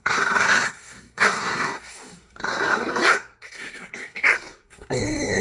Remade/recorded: remade